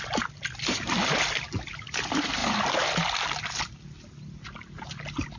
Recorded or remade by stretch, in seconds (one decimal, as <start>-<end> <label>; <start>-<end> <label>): 0.0-5.4 recorded